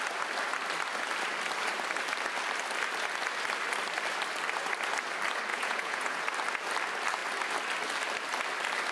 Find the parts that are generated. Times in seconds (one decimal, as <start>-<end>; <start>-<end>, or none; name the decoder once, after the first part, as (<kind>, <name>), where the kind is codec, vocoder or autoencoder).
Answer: 5.5-6.2 (vocoder, Vocos)